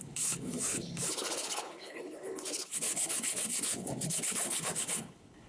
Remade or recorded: remade